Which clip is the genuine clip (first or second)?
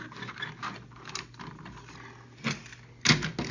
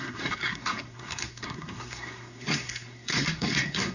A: first